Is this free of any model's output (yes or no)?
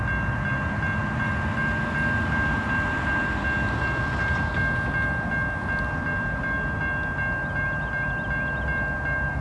yes